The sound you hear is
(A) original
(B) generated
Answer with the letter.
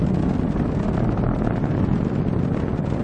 A